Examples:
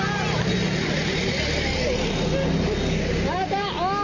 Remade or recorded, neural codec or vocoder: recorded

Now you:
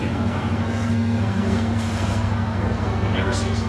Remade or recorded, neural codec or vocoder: remade, codec, SNAC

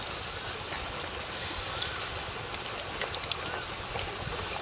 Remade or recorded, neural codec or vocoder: recorded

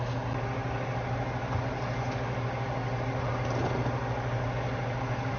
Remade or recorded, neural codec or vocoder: recorded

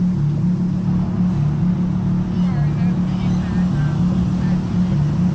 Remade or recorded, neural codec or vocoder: recorded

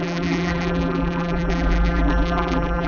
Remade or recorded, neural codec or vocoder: remade, vocoder, BigVGAN v2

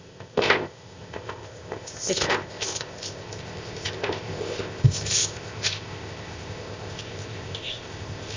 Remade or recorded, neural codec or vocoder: remade, codec, ZipCodec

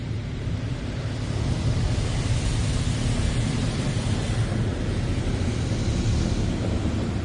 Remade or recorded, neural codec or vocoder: recorded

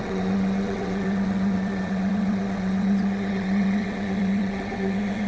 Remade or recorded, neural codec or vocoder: remade, vocoder, WaveNeXt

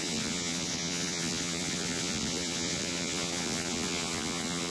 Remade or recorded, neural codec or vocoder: remade, vocoder, Vocos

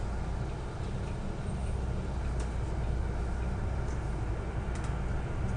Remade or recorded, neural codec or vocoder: recorded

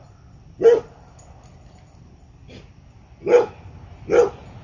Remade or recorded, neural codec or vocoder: recorded